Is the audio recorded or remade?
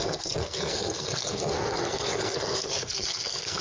remade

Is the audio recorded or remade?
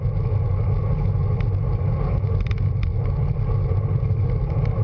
recorded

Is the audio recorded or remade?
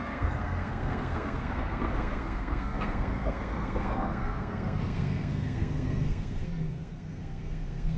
remade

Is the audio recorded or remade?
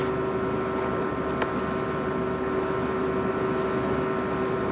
recorded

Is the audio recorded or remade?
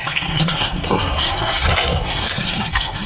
remade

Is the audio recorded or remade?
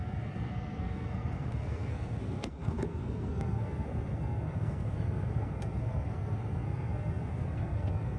remade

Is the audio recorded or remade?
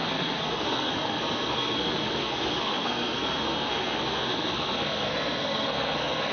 remade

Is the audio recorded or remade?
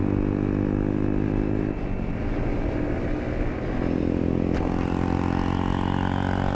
recorded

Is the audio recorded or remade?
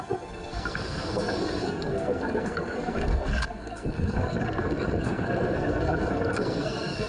remade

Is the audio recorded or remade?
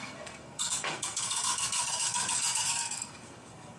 remade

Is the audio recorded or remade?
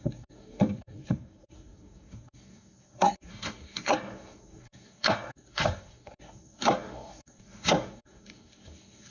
remade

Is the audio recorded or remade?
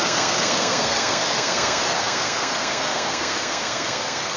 remade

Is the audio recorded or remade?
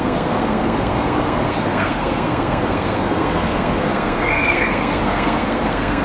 remade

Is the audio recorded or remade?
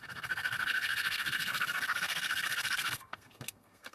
remade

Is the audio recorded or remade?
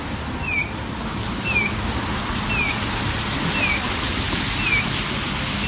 recorded